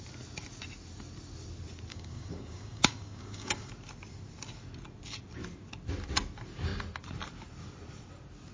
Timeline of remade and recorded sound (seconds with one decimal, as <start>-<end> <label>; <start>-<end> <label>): 0.0-1.9 recorded; 1.9-3.7 remade; 3.7-8.5 recorded